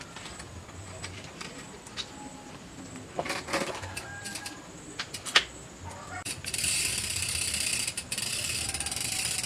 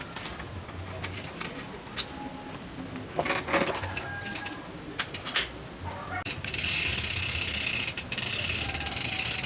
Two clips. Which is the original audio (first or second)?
second